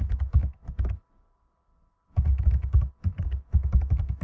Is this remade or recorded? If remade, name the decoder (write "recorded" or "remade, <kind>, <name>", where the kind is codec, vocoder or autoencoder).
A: remade, autoencoder, DAC-VAE